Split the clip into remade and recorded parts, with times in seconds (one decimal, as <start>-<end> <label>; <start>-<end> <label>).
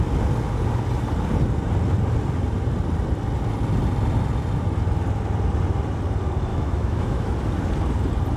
0.0-6.5 recorded; 6.5-7.3 remade; 7.3-8.4 recorded